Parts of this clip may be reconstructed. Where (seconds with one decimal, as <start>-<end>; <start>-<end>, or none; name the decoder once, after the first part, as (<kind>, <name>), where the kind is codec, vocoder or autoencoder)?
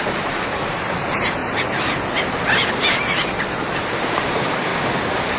0.0-1.4 (vocoder, BigVGAN v2); 3.8-4.7